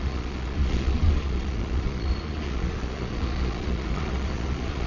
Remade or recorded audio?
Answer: remade